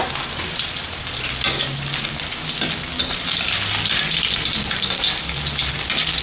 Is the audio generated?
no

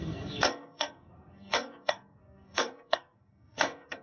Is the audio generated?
yes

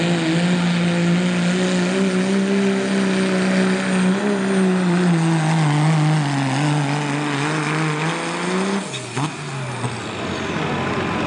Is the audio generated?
no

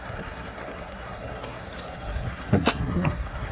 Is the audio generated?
yes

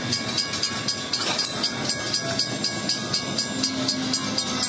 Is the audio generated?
no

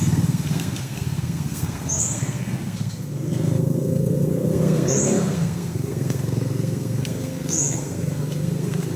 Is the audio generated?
yes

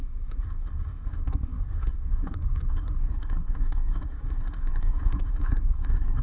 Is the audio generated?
yes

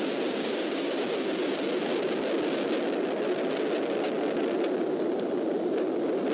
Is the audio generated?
no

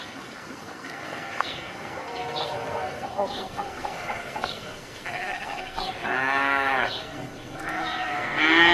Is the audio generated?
yes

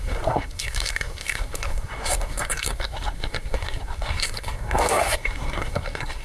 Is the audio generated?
yes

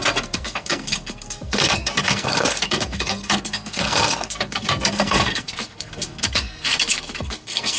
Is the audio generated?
yes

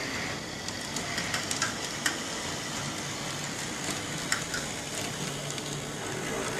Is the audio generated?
no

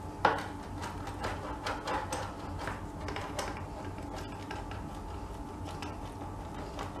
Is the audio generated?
no